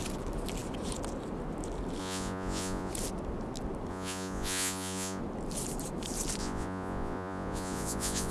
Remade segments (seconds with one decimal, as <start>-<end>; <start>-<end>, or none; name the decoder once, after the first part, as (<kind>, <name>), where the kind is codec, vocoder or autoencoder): 2.0-2.9 (vocoder, Vocos); 3.9-5.2; 6.4-8.3